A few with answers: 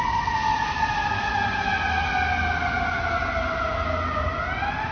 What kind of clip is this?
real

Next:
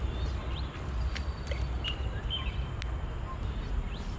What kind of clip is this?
real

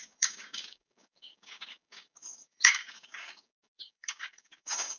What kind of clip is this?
fake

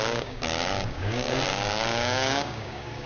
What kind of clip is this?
fake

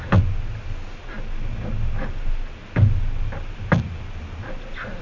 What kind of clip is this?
real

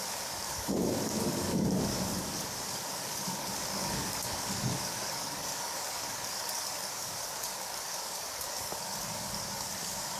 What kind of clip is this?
fake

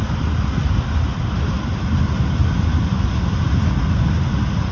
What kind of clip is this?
real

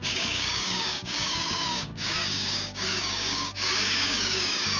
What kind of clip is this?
fake